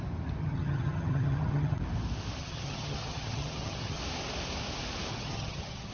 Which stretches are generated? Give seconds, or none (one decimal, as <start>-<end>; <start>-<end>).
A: 0.4-1.8; 2.4-4.0; 5.1-5.9